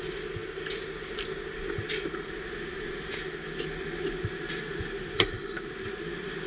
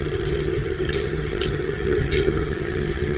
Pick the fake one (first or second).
second